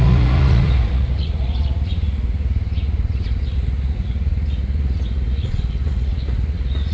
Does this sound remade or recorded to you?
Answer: remade